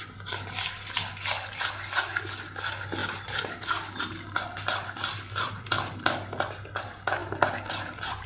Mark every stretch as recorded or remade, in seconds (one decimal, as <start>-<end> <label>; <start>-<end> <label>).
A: 0.0-7.2 remade; 7.2-8.3 recorded